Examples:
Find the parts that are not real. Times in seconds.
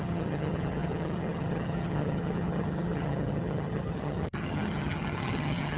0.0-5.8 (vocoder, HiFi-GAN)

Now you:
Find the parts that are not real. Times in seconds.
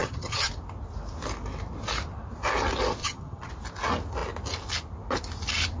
0.0-0.5 (vocoder, HiFi-GAN); 3.0-3.5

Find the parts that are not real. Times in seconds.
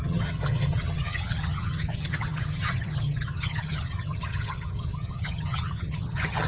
0.0-6.5 (vocoder, HiFi-GAN)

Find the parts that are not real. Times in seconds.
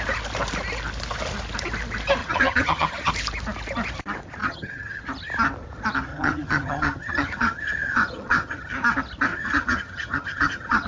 2.2-3.1 (vocoder, HiFi-GAN); 4.4-5.0; 6.1-8.7; 9.3-10.9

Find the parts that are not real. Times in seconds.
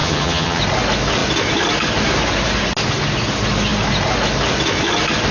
0.0-0.6 (vocoder, HiFi-GAN)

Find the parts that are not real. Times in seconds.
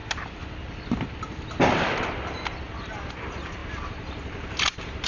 none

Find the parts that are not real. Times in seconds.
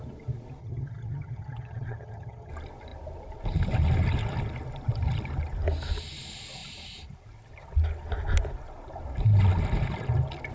0.6-2.5 (vocoder, HiFi-GAN)